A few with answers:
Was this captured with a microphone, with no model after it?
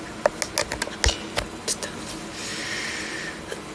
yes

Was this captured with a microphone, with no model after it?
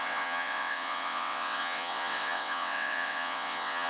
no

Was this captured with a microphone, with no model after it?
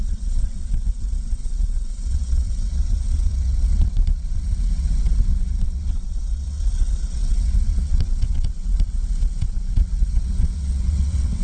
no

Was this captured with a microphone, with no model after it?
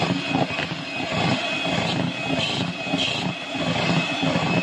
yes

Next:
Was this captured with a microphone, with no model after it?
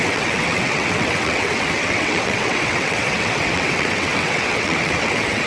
no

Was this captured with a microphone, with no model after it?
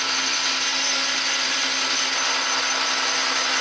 yes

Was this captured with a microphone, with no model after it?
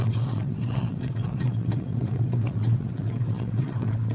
no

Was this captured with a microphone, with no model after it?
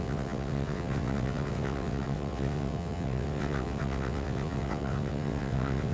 no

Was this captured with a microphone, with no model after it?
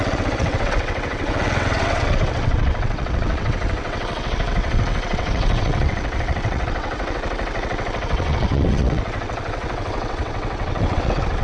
no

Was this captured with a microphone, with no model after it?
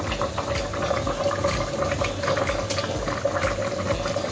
yes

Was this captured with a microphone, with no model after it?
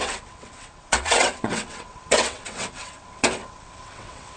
no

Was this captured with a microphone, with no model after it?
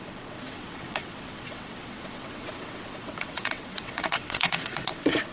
no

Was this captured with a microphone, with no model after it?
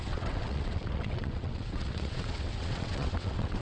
no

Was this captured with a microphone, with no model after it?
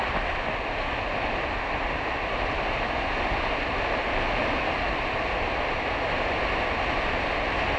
yes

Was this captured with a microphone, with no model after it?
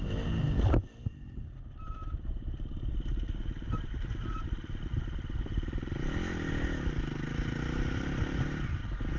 yes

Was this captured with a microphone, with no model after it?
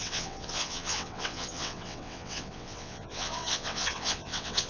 no